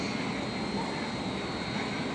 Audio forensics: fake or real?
real